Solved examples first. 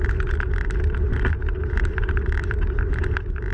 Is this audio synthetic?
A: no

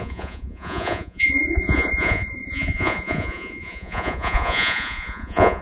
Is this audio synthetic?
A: yes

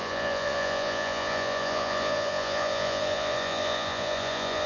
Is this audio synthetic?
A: yes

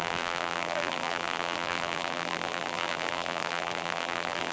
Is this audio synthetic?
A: yes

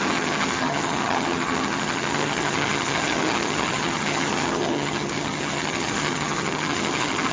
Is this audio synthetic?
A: yes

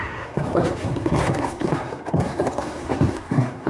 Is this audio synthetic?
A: yes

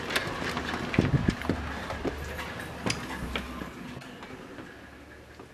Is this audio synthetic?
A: no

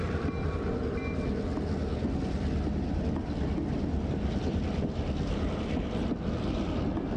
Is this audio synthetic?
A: no